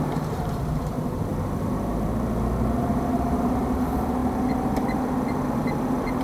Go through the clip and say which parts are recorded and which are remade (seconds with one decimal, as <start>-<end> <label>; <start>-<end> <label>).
0.0-1.3 remade; 1.3-2.8 recorded; 2.8-4.2 remade; 4.2-6.2 recorded